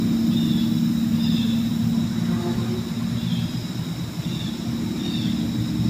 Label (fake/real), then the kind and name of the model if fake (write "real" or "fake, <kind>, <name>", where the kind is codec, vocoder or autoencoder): real